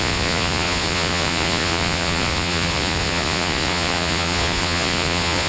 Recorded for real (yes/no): no